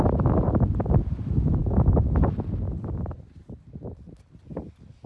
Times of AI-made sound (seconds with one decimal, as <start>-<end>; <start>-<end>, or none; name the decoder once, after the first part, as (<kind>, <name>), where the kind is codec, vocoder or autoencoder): none